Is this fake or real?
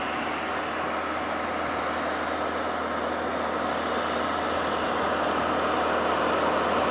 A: real